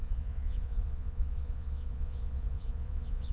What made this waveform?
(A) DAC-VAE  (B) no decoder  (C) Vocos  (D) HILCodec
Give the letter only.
C